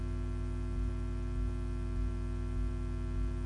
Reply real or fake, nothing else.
real